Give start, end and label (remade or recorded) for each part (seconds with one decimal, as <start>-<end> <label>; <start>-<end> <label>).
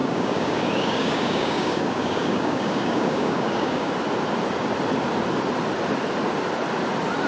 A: 0.0-3.9 remade; 3.9-7.3 recorded